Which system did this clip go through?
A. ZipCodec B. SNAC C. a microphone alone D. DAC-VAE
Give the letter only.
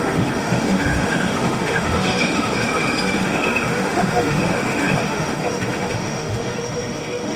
D